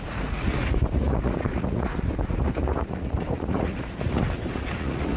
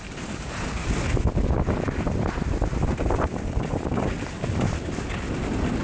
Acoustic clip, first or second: second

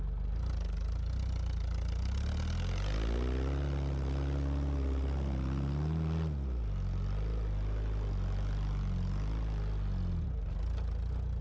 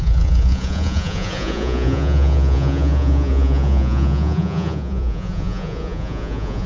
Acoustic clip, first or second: first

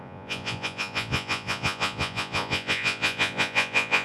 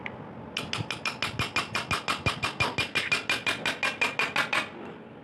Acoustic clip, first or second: second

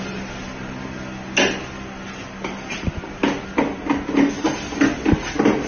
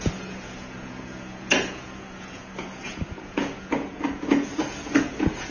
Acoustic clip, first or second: first